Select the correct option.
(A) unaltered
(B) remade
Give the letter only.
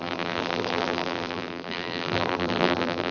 B